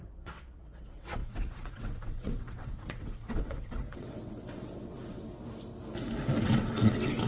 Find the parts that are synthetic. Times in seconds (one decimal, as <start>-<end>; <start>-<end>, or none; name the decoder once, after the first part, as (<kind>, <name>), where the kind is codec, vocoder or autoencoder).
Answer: 0.0-5.3 (vocoder, WaveNeXt); 6.4-7.3